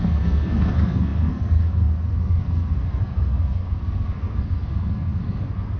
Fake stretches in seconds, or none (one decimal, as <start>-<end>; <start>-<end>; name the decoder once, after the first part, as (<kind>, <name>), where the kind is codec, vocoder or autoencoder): 0.0-5.8 (codec, SNAC)